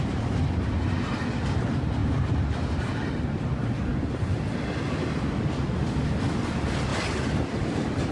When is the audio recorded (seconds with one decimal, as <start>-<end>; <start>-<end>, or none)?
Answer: 0.0-2.0; 3.5-3.9; 6.4-6.9